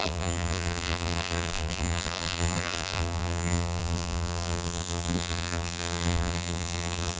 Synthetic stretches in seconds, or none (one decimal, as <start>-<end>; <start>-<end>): 0.0-7.2